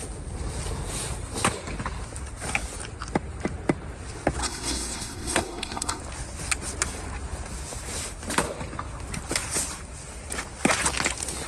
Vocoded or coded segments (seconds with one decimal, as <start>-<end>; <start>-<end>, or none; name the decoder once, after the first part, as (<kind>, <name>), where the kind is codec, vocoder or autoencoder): 4.4-6.0 (codec, SNAC)